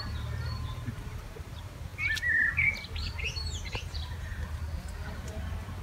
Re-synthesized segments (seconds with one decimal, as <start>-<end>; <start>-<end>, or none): 0.0-1.9; 3.2-4.3